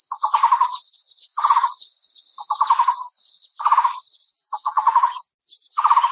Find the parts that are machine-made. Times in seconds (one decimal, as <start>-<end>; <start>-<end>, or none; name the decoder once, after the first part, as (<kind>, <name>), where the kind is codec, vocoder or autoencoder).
4.4-5.0 (vocoder, BigVGAN v2)